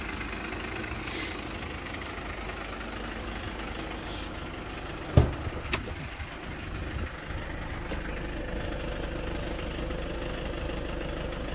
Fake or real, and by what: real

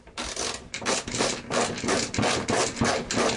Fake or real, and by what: real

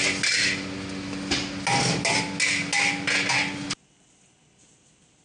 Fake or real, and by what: real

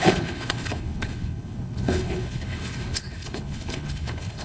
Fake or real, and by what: fake, codec, HILCodec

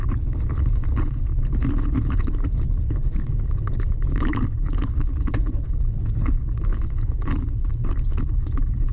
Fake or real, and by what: fake, codec, HILCodec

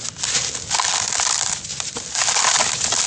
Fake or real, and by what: real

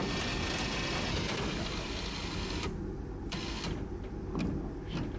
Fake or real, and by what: real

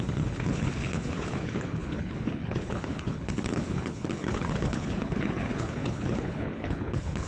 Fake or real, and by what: fake, codec, HILCodec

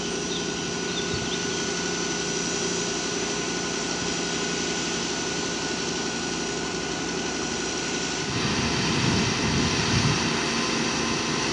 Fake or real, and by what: real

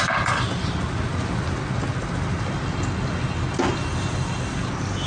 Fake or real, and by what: real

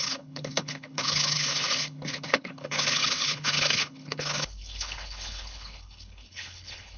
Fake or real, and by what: fake, codec, HILCodec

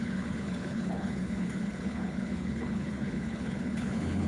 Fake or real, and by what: fake, codec, HILCodec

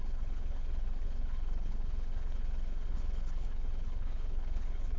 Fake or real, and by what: fake, codec, HILCodec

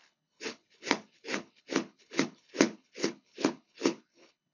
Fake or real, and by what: fake, codec, HILCodec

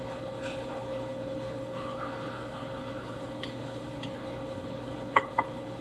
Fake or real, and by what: fake, codec, HILCodec